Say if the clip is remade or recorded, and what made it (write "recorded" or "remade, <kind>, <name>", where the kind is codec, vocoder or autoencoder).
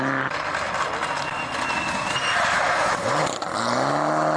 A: recorded